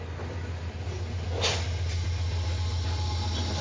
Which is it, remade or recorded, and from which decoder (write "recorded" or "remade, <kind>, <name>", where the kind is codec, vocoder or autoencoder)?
recorded